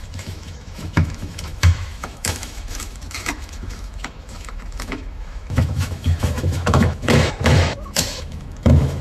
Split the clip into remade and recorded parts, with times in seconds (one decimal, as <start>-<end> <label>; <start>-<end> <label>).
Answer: 0.0-9.0 remade